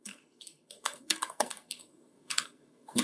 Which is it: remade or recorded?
remade